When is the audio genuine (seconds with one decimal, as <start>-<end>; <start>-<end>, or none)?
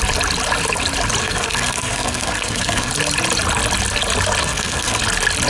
0.0-1.2; 2.9-4.4; 5.0-5.5